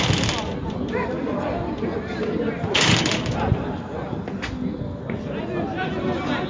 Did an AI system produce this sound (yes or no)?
no